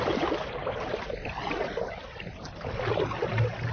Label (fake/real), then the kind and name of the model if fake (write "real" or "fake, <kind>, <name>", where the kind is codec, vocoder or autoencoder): real